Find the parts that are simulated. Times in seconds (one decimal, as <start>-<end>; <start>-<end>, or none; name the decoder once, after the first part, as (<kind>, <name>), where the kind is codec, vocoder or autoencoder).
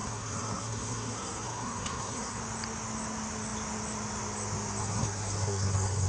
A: 0.0-2.4 (codec, SNAC); 4.8-6.1